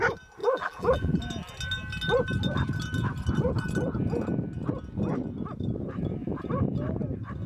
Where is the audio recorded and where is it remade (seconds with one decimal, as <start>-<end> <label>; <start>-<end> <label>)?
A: 0.0-0.4 recorded; 0.4-1.2 remade; 1.2-7.5 recorded